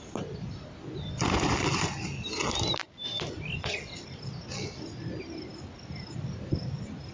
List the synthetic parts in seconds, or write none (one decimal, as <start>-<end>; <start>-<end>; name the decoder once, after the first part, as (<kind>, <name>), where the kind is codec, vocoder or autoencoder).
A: none